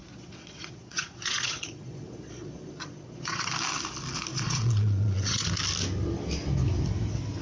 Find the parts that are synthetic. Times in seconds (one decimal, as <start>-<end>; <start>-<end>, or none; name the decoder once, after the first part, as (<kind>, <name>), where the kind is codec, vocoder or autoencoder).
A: 0.0-3.5 (vocoder, Vocos); 4.3-5.5

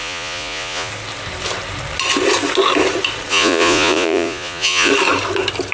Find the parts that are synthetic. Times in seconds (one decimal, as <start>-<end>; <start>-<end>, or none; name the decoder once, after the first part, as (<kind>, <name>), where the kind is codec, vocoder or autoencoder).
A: 0.0-0.9 (vocoder, Vocos); 3.3-4.9

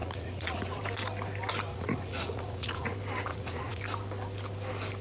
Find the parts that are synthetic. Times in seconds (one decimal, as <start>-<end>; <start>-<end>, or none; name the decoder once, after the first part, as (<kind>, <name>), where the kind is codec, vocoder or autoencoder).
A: 0.0-0.8 (vocoder, Vocos); 1.7-2.9; 3.3-3.8

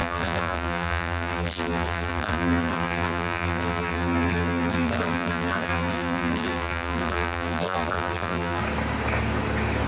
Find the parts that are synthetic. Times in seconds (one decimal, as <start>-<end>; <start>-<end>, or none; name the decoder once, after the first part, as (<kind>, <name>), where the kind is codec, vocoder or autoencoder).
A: 0.0-8.6 (vocoder, BigVGAN v2)

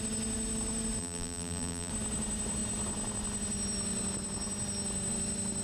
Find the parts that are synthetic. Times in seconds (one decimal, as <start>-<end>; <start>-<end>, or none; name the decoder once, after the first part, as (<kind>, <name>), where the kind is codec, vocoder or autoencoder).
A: 1.0-1.9 (vocoder, BigVGAN v2)

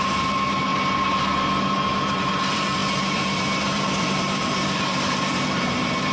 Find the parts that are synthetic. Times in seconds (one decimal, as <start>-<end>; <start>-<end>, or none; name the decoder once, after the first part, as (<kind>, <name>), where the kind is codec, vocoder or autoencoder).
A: 0.0-0.7 (vocoder, BigVGAN v2); 1.9-6.1